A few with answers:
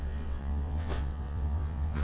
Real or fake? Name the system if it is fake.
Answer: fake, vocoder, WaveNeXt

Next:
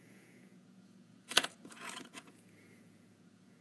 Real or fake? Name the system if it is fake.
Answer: fake, vocoder, Vocos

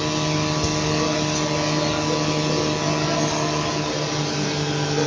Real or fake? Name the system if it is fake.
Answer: real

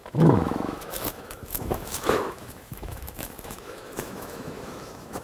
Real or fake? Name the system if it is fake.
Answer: fake, autoencoder, DAC-VAE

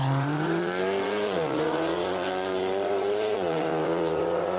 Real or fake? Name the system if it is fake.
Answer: fake, vocoder, Vocos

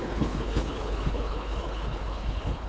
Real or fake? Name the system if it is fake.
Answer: fake, codec, HILCodec